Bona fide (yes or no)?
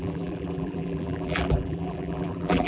no